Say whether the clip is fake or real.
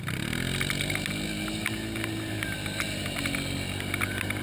real